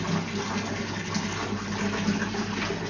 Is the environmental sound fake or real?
real